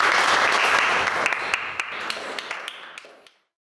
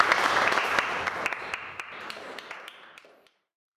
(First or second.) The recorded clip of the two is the first